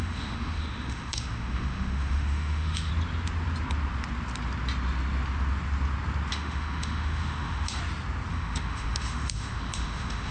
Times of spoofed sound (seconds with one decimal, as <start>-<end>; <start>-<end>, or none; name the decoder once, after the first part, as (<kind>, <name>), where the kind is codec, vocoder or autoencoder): 0.0-2.9 (autoencoder, DAC-VAE); 6.3-7.8; 8.3-10.3